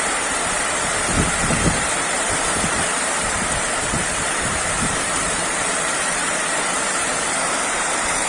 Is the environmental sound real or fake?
fake